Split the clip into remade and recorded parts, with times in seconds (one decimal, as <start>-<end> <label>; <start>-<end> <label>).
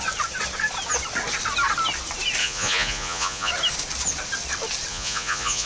0.0-2.4 recorded; 2.4-3.5 remade; 3.5-4.9 recorded; 4.9-5.7 remade